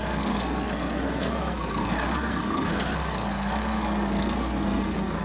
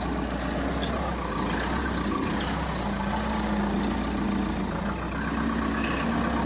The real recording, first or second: second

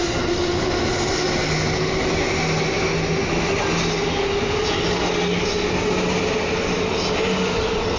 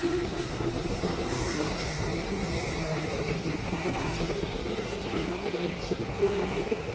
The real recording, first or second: first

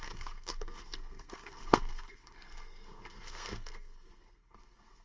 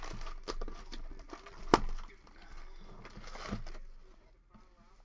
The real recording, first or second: second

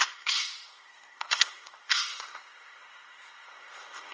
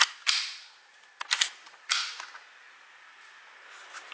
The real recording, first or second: second